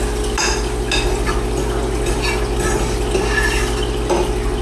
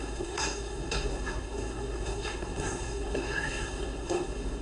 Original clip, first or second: first